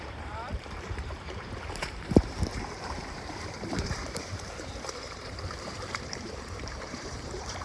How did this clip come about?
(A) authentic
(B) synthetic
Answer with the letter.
B